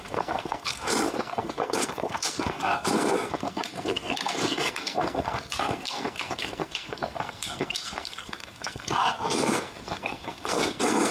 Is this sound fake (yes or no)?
yes